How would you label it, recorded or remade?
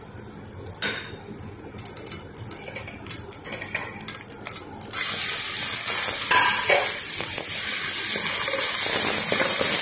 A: recorded